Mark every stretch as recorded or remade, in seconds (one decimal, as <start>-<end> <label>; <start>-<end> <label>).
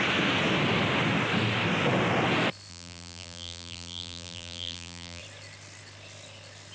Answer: 0.0-2.7 recorded; 2.7-5.2 remade; 5.2-6.7 recorded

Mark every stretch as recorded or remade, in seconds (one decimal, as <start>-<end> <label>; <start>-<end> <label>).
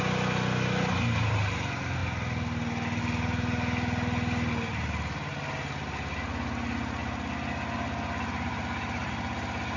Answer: 0.0-9.8 recorded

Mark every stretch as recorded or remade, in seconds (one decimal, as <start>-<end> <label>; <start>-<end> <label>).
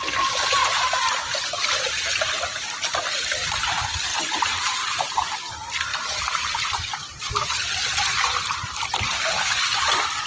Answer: 0.0-0.6 recorded; 0.6-2.3 remade; 2.3-4.1 recorded; 4.1-5.4 remade; 5.4-5.9 recorded; 5.9-6.8 remade; 6.8-10.3 recorded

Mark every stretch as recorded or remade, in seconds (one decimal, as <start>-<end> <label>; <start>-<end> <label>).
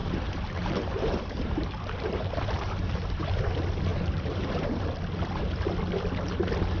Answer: 0.0-3.4 remade; 3.4-3.9 recorded; 3.9-4.8 remade; 4.8-6.8 recorded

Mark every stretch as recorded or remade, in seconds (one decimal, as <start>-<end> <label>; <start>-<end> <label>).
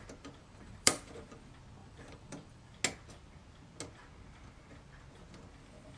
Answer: 0.0-0.4 recorded; 0.4-1.0 remade; 1.0-1.8 recorded; 1.8-2.7 remade; 2.7-6.0 recorded